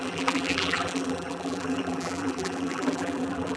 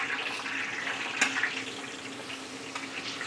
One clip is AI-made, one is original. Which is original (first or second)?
second